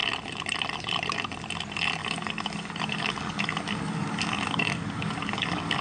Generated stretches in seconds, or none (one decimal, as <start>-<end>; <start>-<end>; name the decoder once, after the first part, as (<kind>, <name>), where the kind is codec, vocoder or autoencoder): 2.0-5.8 (codec, DAC)